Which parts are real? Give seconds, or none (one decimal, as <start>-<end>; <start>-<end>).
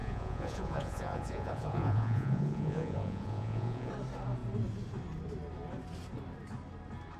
3.9-7.2